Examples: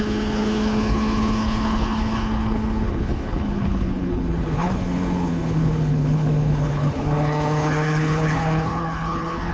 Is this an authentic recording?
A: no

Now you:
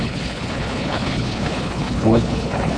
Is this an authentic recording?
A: no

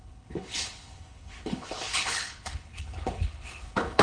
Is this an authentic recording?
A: no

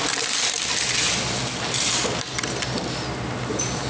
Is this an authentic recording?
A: yes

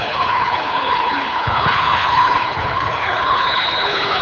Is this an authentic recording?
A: no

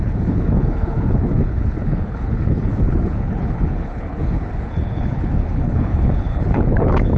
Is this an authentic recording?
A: no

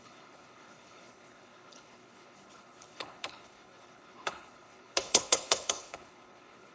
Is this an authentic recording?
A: no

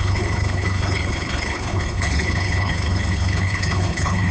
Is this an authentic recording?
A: no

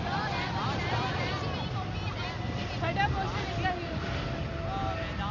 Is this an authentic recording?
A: yes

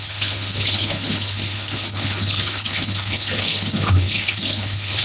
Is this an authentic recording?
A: no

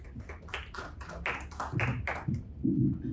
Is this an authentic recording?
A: yes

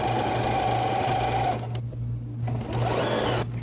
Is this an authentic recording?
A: yes